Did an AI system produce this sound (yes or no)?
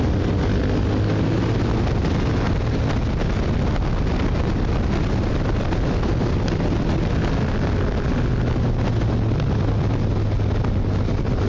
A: no